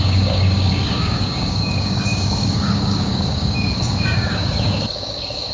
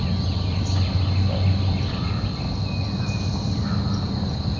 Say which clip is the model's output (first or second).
first